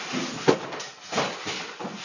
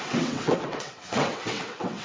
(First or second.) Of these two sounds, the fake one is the second